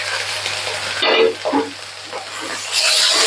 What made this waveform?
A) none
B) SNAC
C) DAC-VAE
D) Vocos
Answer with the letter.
A